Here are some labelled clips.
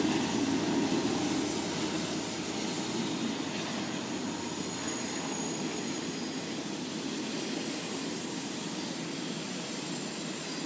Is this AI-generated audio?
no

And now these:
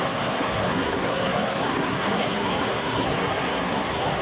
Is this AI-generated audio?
yes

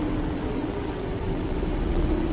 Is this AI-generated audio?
yes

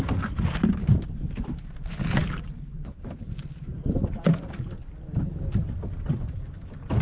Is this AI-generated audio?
no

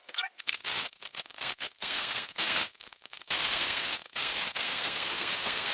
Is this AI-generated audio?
yes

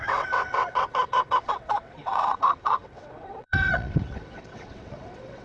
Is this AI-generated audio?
yes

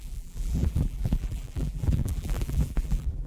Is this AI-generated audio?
yes